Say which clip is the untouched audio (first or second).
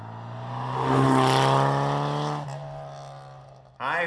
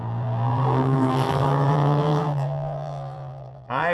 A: first